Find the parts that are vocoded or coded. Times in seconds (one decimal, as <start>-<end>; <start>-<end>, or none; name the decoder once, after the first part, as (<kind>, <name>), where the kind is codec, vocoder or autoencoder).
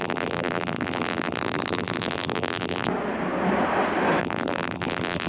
0.0-2.9 (vocoder, BigVGAN v2); 4.2-5.3